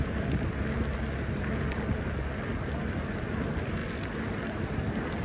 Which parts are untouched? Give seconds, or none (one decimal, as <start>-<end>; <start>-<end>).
0.0-5.2